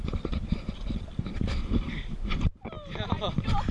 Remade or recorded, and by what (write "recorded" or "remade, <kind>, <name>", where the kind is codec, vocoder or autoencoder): recorded